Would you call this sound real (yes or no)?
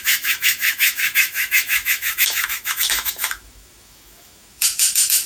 no